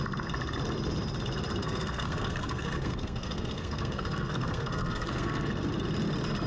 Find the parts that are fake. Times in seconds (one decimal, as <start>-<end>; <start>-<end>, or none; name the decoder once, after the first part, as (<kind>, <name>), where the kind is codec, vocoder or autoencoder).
1.6-5.5 (codec, SNAC)